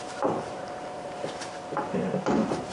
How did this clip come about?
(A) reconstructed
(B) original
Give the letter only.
A